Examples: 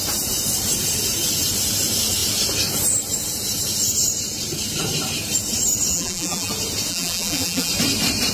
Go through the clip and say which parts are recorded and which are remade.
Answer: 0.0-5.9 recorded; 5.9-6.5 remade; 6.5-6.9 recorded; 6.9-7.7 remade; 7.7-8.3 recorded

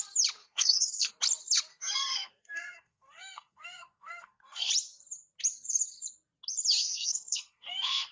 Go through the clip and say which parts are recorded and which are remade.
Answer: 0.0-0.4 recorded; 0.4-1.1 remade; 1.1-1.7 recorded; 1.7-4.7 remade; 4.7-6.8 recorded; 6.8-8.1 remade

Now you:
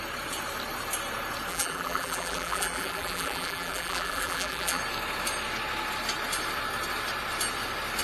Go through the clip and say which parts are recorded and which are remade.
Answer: 0.0-1.5 recorded; 1.5-4.8 remade; 4.8-8.0 recorded

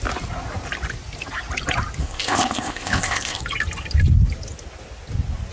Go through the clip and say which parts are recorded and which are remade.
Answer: 0.0-2.0 recorded; 2.0-3.4 remade; 3.4-5.5 recorded